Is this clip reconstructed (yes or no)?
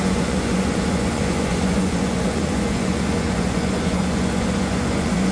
yes